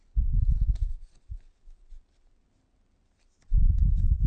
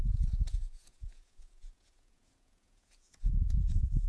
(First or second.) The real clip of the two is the first